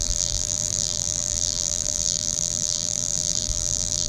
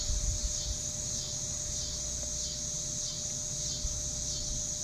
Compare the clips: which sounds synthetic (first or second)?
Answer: first